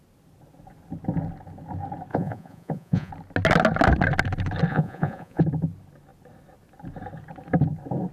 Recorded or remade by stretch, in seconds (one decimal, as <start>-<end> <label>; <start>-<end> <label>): 0.0-2.1 recorded; 2.1-3.1 remade; 3.1-4.7 recorded; 4.7-5.4 remade; 5.4-8.1 recorded